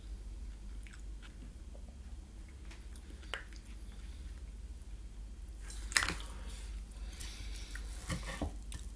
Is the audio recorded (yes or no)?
yes